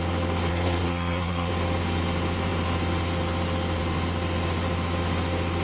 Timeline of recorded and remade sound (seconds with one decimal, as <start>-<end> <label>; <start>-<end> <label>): 0.0-0.5 recorded; 0.5-1.5 remade; 1.5-5.6 recorded